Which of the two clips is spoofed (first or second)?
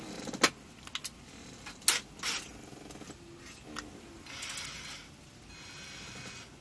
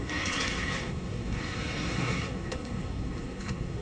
second